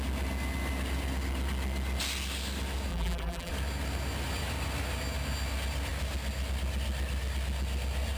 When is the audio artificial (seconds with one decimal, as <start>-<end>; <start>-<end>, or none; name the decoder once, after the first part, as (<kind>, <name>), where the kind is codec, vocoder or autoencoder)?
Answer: 2.9-3.5 (vocoder, BigVGAN v2)